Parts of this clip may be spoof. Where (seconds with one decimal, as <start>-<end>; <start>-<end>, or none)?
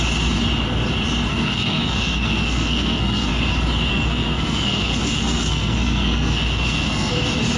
1.3-3.3; 3.9-7.1